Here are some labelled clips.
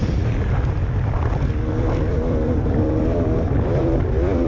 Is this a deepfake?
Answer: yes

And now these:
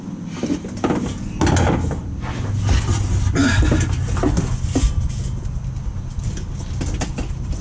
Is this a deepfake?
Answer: no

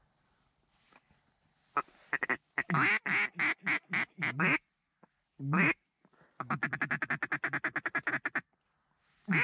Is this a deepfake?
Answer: no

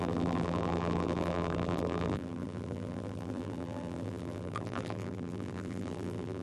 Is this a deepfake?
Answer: yes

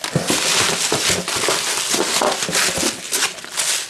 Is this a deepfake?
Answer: no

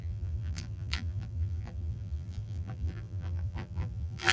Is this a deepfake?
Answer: yes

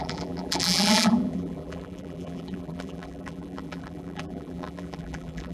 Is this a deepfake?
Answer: yes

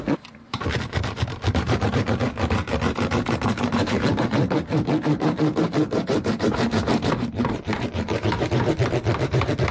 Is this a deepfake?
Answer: yes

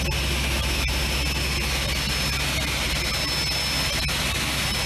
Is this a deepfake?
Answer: no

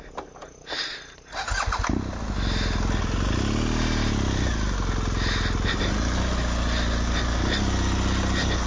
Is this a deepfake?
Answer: no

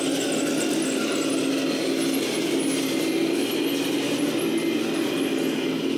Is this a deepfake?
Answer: no